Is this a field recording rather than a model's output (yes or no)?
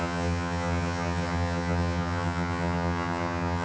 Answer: no